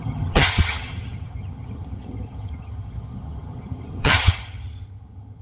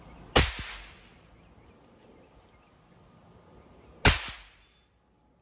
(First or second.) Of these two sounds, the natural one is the second